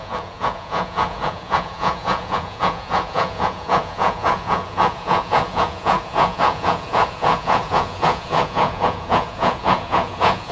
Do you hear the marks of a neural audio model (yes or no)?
yes